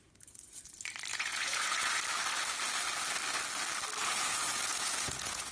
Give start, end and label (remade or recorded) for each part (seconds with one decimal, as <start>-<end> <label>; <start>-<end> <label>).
0.0-1.1 recorded; 1.1-2.0 remade; 2.0-4.0 recorded; 4.0-5.5 remade